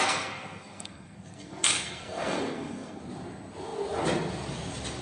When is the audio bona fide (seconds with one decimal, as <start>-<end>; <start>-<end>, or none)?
3.0-5.0